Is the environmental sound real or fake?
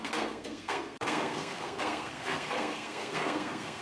fake